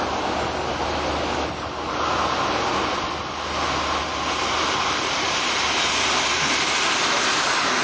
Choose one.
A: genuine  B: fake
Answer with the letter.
A